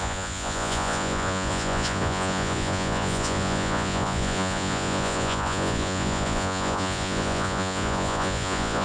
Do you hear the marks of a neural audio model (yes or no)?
yes